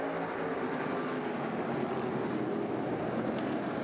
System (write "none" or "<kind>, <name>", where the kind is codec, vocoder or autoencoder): none